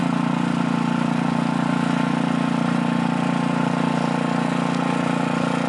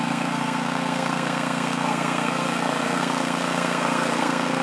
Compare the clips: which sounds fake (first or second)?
second